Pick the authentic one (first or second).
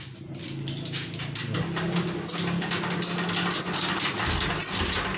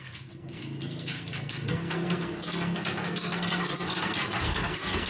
first